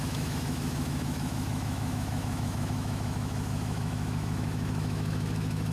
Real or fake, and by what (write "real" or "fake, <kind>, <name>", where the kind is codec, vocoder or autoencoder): fake, autoencoder, DAC-VAE